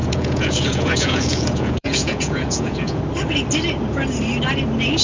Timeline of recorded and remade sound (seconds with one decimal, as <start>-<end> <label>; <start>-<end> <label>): 0.0-3.0 remade; 3.0-5.0 recorded